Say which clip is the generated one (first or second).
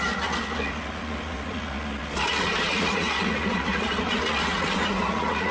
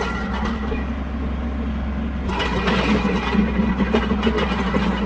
first